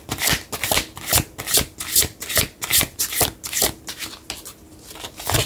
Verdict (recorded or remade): recorded